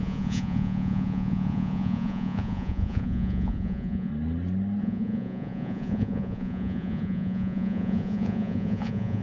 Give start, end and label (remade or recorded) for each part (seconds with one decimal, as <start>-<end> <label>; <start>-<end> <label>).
0.0-4.1 remade; 4.1-4.8 recorded; 4.8-9.2 remade